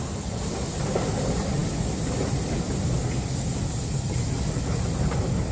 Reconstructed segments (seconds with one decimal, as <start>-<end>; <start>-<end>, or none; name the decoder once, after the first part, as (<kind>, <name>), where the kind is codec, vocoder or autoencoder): none